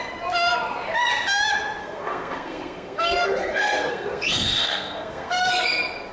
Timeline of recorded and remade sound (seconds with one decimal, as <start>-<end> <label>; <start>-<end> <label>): 0.0-1.8 recorded; 1.8-5.5 remade; 5.5-6.1 recorded